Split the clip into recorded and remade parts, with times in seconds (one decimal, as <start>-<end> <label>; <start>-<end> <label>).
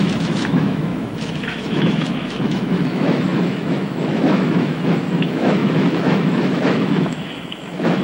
0.0-8.0 remade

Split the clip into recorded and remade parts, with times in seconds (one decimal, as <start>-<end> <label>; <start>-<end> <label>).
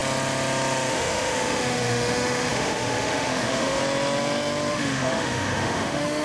0.0-0.9 recorded; 0.9-3.8 remade; 3.8-4.7 recorded; 4.7-6.2 remade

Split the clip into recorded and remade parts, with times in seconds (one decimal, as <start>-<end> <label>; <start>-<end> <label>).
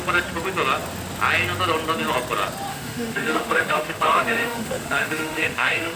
0.0-2.7 recorded; 2.7-6.0 remade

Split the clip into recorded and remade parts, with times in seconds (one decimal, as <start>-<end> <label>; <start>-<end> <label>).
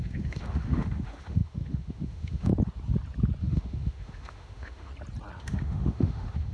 0.0-2.5 remade; 2.5-3.4 recorded; 3.4-4.9 remade; 4.9-5.4 recorded; 5.4-6.5 remade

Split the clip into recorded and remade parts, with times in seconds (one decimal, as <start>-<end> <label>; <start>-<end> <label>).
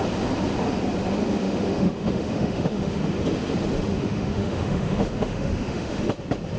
0.0-1.4 recorded; 1.4-3.0 remade; 3.0-3.9 recorded; 3.9-6.0 remade; 6.0-6.6 recorded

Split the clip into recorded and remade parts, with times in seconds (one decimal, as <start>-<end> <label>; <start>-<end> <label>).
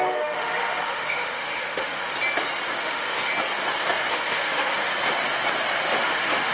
0.0-2.1 remade; 2.1-2.8 recorded; 2.8-3.3 remade; 3.3-4.1 recorded; 4.1-4.9 remade; 4.9-6.0 recorded; 6.0-6.5 remade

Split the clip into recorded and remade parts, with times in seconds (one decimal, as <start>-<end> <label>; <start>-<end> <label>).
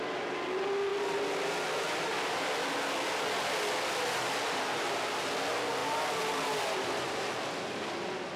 0.0-8.4 recorded